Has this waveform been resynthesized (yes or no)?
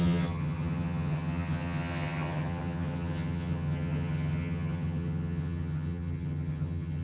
yes